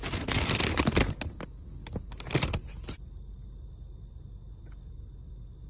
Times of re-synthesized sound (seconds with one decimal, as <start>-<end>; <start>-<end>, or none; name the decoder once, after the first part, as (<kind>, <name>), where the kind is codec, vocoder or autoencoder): none